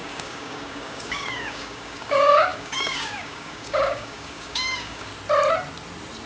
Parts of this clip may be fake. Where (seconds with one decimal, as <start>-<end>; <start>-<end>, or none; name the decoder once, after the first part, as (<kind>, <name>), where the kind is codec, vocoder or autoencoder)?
0.0-5.1 (codec, DAC)